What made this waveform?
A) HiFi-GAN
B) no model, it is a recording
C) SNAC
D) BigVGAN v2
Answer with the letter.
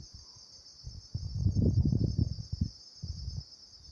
B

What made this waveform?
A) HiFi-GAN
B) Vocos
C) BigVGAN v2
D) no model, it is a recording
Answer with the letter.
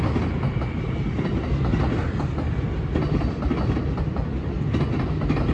D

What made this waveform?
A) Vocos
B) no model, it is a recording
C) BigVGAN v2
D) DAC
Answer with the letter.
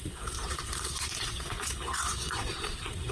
A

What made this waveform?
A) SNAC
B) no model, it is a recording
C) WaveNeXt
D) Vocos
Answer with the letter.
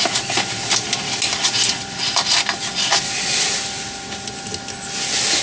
B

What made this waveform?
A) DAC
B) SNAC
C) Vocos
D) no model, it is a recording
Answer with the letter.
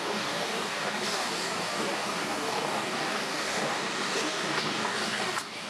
A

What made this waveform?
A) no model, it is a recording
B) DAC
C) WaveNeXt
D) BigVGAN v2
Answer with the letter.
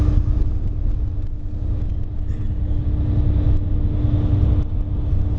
A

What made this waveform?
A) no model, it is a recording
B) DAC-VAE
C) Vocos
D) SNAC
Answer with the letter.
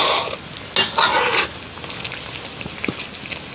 A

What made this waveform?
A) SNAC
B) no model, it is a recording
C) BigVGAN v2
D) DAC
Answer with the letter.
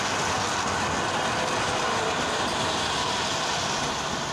B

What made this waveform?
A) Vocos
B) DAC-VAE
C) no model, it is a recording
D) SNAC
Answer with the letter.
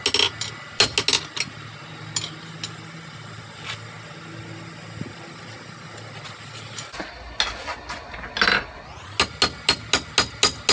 C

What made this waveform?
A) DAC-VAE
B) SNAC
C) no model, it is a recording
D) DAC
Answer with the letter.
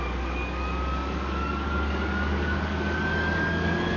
D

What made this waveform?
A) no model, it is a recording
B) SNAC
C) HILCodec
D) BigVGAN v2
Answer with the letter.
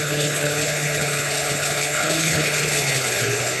C